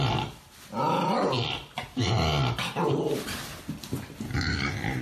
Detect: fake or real real